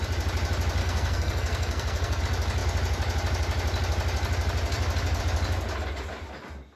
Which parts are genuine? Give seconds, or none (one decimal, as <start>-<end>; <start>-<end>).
0.0-0.8; 2.2-6.8

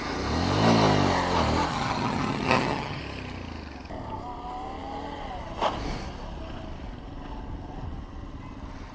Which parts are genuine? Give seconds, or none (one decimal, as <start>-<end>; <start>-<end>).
0.0-1.7; 3.0-8.9

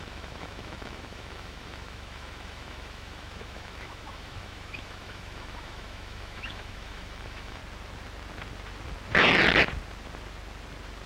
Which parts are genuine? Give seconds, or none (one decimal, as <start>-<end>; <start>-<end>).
7.6-11.1